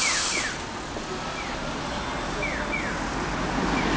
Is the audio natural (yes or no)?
yes